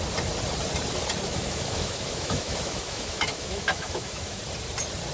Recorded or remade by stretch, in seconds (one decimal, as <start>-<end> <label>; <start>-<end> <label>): 0.0-1.3 recorded; 1.3-4.4 remade; 4.4-5.1 recorded

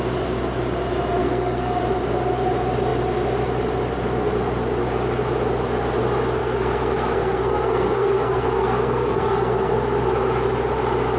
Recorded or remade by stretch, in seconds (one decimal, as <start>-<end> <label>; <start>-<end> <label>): 0.0-1.2 recorded; 1.2-1.8 remade; 1.8-6.4 recorded; 6.4-9.7 remade; 9.7-11.2 recorded

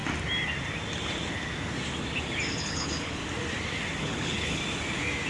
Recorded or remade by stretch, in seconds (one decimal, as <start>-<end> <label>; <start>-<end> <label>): 0.0-2.6 recorded; 2.6-3.2 remade; 3.2-4.0 recorded; 4.0-4.6 remade; 4.6-5.3 recorded

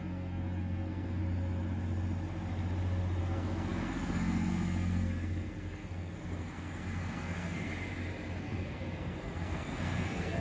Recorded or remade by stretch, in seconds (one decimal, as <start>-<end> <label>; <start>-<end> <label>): 0.0-1.2 remade; 1.2-3.2 recorded; 3.2-7.7 remade; 7.7-8.4 recorded; 8.4-10.4 remade

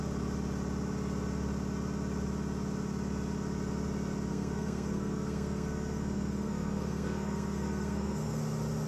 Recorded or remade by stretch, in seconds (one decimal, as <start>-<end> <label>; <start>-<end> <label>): 0.0-4.3 recorded; 4.3-8.4 remade; 8.4-8.9 recorded

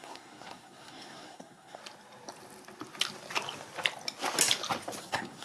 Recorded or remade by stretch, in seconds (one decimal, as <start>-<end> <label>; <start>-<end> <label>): 0.0-1.8 remade; 1.8-5.0 recorded; 5.0-5.4 remade

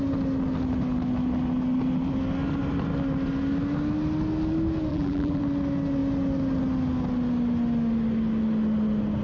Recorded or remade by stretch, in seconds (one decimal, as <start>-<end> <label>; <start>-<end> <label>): 0.0-4.9 recorded; 4.9-5.4 remade; 5.4-9.2 recorded

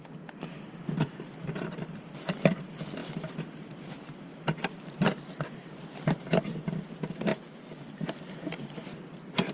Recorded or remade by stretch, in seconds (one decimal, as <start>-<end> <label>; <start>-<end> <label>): 0.0-9.5 remade